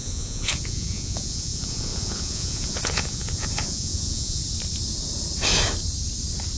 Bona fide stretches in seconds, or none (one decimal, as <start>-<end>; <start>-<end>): 4.4-6.6